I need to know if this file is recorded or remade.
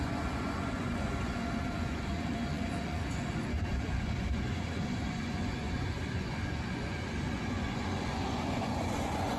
remade